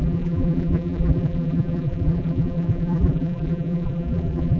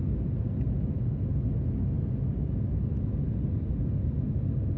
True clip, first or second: second